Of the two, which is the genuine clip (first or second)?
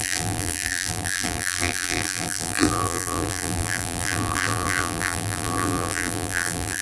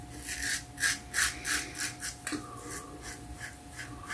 second